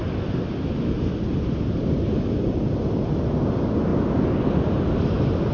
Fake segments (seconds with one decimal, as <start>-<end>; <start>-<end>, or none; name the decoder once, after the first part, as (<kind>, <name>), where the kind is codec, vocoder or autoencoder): none